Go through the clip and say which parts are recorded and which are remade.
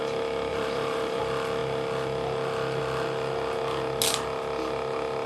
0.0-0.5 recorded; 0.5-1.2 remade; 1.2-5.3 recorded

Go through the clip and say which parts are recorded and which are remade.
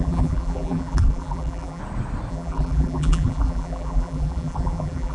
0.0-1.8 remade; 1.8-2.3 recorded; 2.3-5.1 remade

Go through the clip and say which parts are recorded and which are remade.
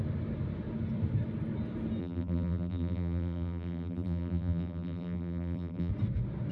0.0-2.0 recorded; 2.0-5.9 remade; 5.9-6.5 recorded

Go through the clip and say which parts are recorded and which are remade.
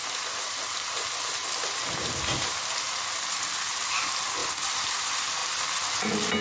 0.0-3.8 remade; 3.8-4.4 recorded; 4.4-5.0 remade; 5.0-6.4 recorded